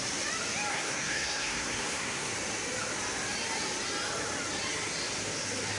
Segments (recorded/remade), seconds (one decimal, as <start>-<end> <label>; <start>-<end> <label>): 0.0-0.7 recorded; 0.7-2.3 remade; 2.3-5.8 recorded